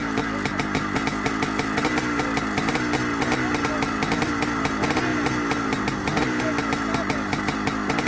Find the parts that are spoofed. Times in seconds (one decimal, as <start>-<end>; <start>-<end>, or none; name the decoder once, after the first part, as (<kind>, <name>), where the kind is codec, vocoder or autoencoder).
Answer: none